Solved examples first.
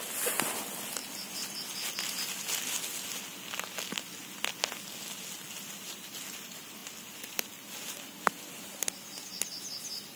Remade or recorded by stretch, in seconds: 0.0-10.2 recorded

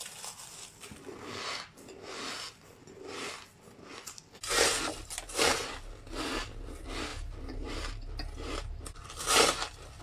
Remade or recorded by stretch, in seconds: 0.0-10.0 recorded

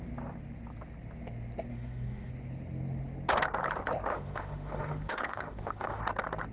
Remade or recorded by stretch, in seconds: 0.0-1.7 recorded; 1.7-2.3 remade; 2.3-4.1 recorded; 4.1-6.0 remade; 6.0-6.5 recorded

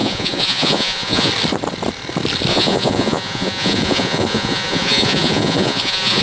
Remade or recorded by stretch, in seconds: 0.0-1.3 remade; 1.3-2.5 recorded; 2.5-6.2 remade

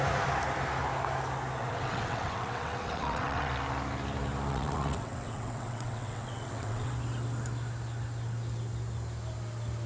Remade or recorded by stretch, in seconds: 0.0-1.6 recorded; 1.6-3.5 remade; 3.5-4.5 recorded; 4.5-6.9 remade; 6.9-9.9 recorded

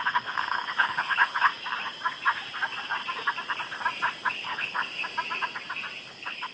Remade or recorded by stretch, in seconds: 0.0-1.5 remade; 1.5-4.3 recorded; 4.3-4.8 remade; 4.8-6.1 recorded; 6.1-6.5 remade

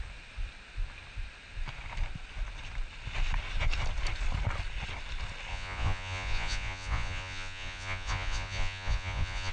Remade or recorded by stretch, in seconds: 0.0-5.5 recorded; 5.5-9.5 remade